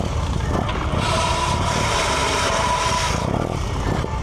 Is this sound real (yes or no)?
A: no